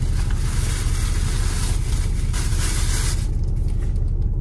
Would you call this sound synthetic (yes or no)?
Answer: no